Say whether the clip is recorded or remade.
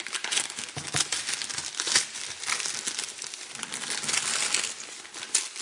recorded